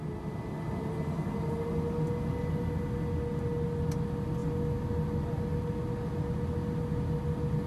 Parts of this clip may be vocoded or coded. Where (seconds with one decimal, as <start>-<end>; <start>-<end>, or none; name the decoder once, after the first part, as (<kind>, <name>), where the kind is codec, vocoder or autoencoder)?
none